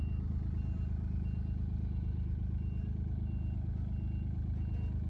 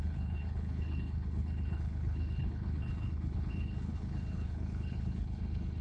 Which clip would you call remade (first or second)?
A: second